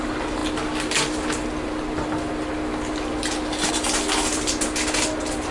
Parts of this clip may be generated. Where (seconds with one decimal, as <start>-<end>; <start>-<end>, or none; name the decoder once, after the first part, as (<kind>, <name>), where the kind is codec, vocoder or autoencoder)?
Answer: none